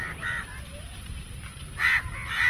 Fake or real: real